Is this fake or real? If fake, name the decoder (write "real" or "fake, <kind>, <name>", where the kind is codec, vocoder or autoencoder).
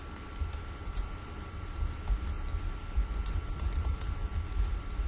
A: real